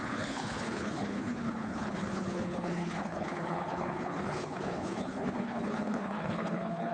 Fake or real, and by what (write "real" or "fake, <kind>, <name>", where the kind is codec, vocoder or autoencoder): fake, codec, HILCodec